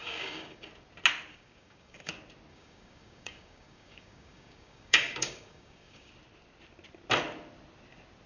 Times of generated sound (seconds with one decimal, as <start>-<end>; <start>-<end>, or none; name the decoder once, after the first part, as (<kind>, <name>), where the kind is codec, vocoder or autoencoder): 0.0-0.7 (codec, DAC); 1.3-2.1; 2.5-6.1